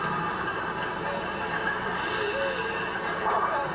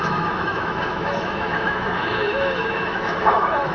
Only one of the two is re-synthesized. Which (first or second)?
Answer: second